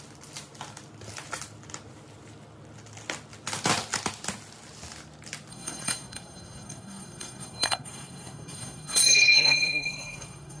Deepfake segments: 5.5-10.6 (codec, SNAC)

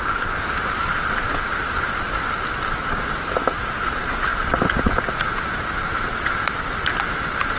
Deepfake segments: none

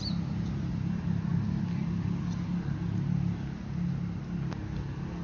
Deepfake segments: none

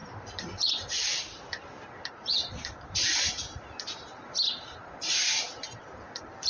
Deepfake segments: 0.0-0.9 (vocoder, BigVGAN v2); 2.3-3.7

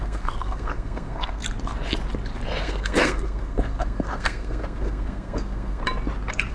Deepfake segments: 0.0-1.4 (codec, SNAC); 2.6-5.8